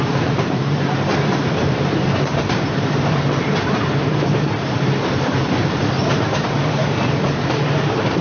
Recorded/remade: remade